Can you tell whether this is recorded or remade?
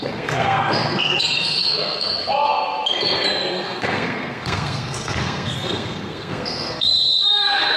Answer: remade